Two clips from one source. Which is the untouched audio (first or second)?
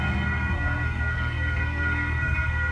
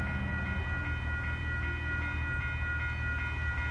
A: second